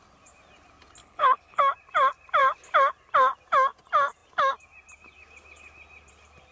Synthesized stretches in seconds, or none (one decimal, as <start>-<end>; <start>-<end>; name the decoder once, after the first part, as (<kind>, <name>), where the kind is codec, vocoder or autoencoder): 1.0-1.6 (codec, HILCodec)